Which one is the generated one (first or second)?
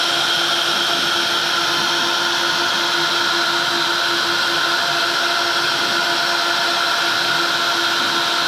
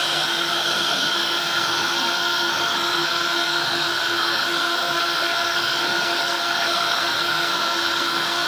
second